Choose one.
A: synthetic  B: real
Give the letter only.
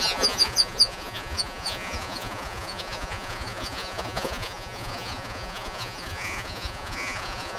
A